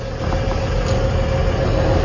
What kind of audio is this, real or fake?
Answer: real